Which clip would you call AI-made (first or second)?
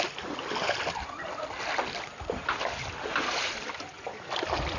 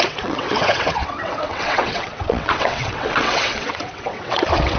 second